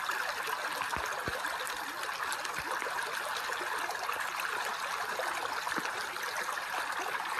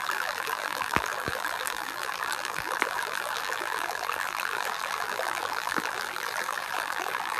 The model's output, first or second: second